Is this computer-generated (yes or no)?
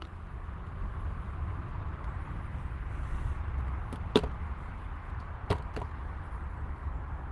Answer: no